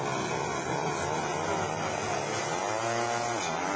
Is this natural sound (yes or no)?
yes